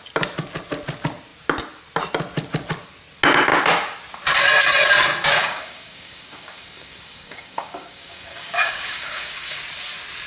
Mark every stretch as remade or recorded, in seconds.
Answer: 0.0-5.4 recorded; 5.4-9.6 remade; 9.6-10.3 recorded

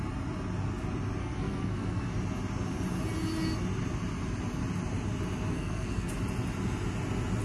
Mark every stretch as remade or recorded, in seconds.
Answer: 0.0-1.2 recorded; 1.2-2.1 remade; 2.1-5.5 recorded; 5.5-6.1 remade; 6.1-7.4 recorded

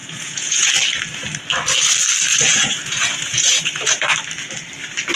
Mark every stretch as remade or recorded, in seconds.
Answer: 0.0-0.7 remade; 0.7-2.3 recorded; 2.3-4.0 remade; 4.0-5.2 recorded

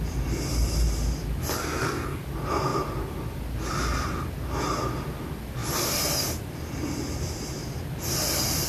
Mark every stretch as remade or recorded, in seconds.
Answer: 0.0-1.6 recorded; 1.6-2.2 remade; 2.2-8.7 recorded

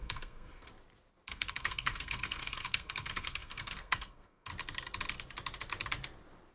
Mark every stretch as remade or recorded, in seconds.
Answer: 0.0-0.7 remade; 0.7-1.3 recorded; 1.3-4.5 remade; 4.5-6.5 recorded

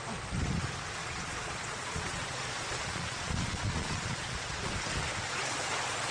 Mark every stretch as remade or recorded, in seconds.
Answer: 0.0-1.0 recorded; 1.0-4.7 remade; 4.7-6.1 recorded

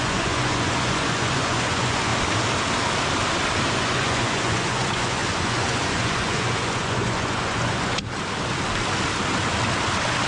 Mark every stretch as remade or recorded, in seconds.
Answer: 0.0-2.1 remade; 2.1-3.7 recorded; 3.7-8.0 remade; 8.0-10.3 recorded